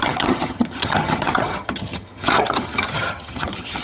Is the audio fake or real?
fake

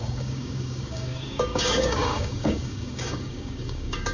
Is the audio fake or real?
fake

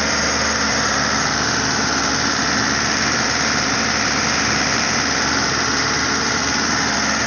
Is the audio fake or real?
fake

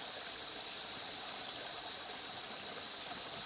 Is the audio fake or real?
real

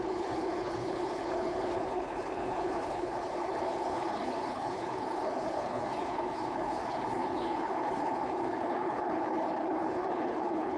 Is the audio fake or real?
fake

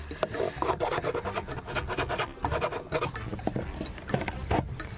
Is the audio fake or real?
real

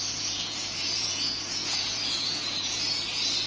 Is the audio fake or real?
fake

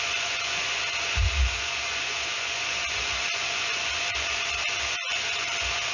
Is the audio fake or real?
fake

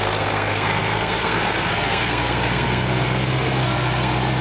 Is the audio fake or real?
fake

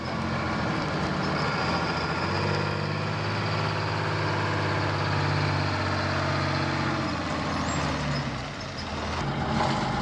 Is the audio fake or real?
real